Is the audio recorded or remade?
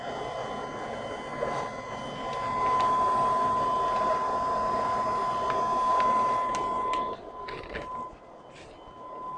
recorded